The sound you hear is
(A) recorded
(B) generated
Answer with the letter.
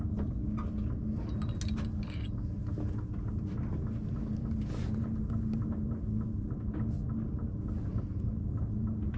A